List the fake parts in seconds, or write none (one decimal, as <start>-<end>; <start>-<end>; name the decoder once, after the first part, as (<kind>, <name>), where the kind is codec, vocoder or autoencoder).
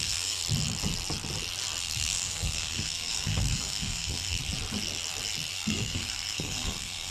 0.0-0.4 (codec, SNAC); 1.8-4.4; 5.5-7.1